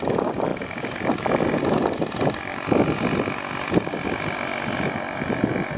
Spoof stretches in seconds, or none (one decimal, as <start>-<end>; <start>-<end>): none